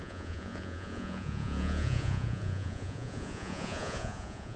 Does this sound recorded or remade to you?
remade